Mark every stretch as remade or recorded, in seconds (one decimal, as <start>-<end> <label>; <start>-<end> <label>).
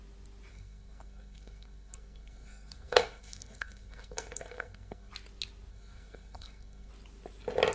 0.0-0.5 recorded; 0.5-5.1 remade; 5.1-5.7 recorded; 5.7-6.9 remade; 6.9-7.7 recorded